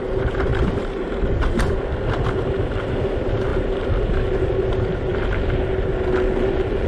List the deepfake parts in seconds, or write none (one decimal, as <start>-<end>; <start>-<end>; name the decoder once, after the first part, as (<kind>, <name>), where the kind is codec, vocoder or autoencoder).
none